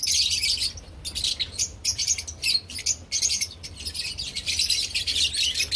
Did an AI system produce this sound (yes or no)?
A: no